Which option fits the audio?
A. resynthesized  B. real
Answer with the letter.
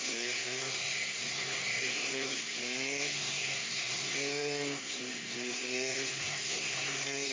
A